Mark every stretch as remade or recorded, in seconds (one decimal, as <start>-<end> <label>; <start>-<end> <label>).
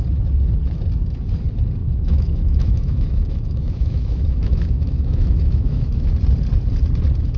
0.0-1.8 recorded; 1.8-6.1 remade; 6.1-7.4 recorded